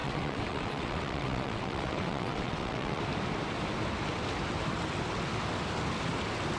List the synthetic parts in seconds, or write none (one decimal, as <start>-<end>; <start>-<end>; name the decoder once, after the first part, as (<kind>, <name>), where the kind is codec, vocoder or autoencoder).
0.0-3.0 (vocoder, WaveNeXt)